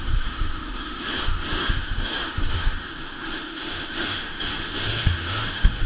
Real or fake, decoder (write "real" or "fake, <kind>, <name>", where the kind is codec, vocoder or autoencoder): fake, autoencoder, DAC-VAE